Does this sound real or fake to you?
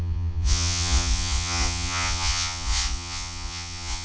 fake